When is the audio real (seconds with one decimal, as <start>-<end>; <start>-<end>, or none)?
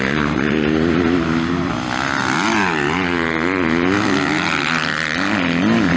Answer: 0.0-6.0